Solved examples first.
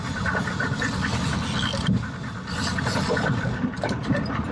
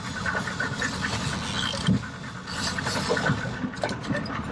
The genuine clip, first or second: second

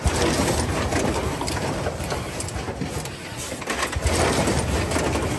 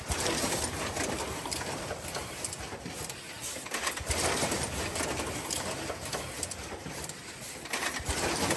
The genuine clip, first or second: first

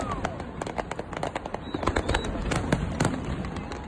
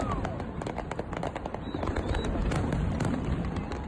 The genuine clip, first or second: first